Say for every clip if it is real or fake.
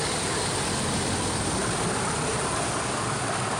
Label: real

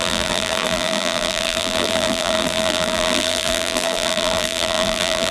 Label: fake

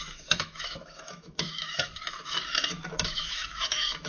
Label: fake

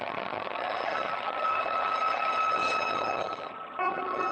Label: fake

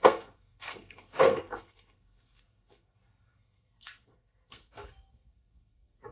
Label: fake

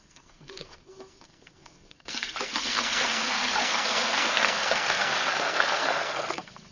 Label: fake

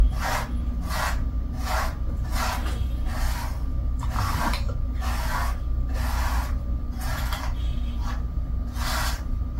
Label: real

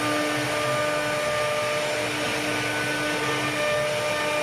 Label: real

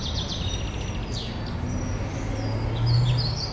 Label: real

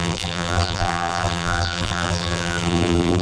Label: fake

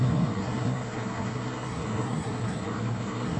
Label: fake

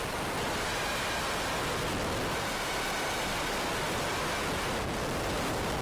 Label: real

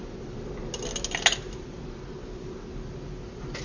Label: real